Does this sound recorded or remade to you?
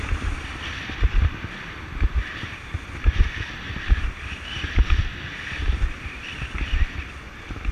recorded